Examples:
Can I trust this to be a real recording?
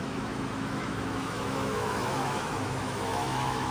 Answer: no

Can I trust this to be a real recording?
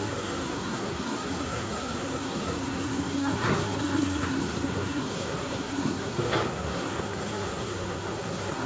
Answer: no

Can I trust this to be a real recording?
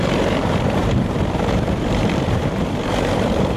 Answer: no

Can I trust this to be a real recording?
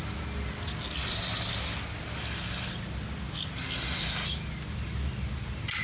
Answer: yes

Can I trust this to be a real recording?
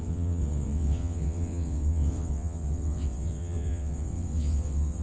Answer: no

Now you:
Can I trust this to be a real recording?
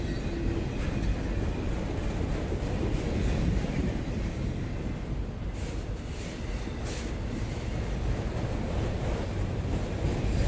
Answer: yes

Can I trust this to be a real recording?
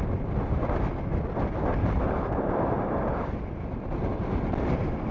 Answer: yes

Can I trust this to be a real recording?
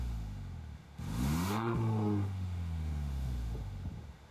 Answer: no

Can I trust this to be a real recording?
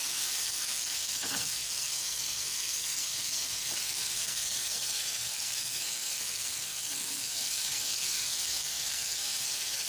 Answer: no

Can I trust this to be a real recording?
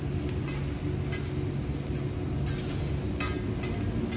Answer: yes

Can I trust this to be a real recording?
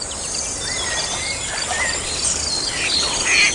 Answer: yes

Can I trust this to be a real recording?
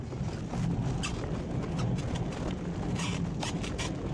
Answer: yes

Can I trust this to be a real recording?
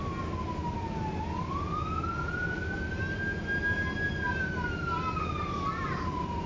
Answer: yes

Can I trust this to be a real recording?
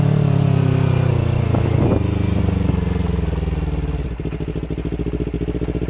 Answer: yes